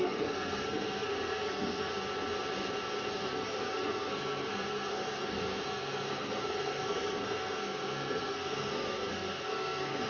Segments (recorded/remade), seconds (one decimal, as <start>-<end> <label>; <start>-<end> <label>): 0.0-1.9 remade; 1.9-3.1 recorded; 3.1-10.1 remade